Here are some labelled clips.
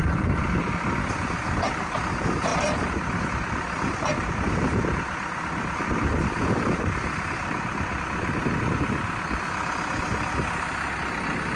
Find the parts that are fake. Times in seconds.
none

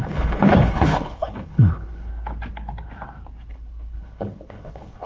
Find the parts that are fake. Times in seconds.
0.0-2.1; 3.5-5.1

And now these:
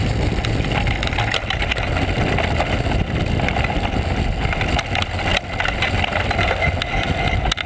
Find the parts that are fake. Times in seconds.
none

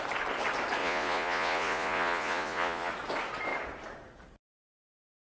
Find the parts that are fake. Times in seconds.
0.8-2.9

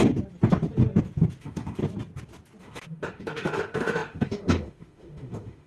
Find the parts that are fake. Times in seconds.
1.4-1.8; 2.6-5.7

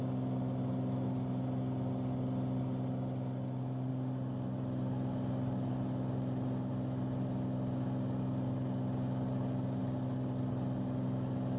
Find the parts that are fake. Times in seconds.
none